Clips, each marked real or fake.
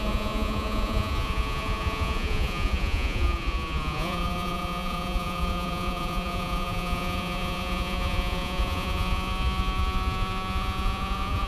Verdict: fake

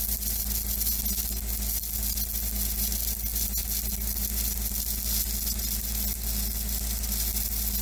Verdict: real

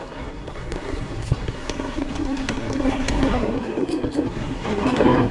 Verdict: fake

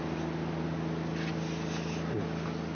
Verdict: real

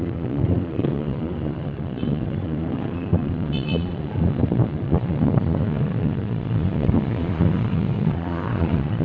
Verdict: fake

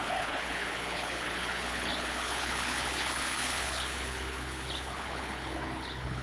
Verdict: fake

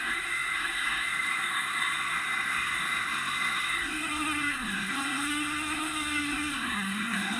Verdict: fake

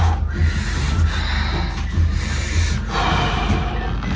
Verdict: real